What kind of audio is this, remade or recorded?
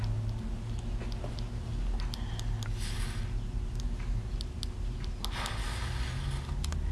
recorded